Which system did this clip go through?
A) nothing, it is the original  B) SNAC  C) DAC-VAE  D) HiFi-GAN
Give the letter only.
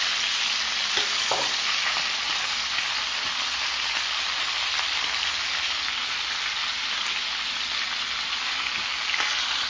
A